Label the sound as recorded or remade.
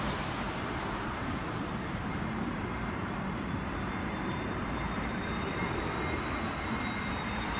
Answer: remade